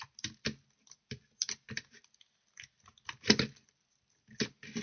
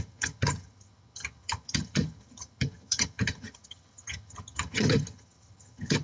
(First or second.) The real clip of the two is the first